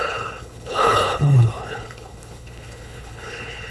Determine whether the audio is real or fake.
fake